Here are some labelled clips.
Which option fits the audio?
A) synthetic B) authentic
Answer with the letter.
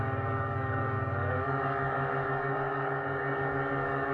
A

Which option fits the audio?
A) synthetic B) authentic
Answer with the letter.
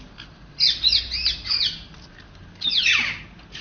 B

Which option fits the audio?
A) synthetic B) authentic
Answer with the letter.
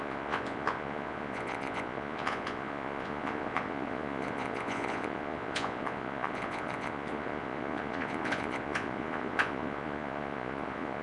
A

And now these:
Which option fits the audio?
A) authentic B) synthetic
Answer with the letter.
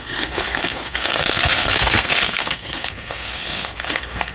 B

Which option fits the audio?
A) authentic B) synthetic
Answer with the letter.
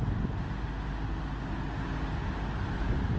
A